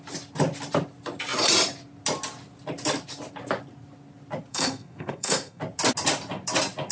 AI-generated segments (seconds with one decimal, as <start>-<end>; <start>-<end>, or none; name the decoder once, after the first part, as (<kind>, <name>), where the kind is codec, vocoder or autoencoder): 4.5-5.6 (codec, SNAC)